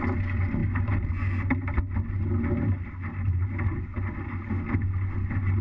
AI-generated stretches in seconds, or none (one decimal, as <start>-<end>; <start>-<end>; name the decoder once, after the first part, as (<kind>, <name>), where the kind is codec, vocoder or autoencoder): none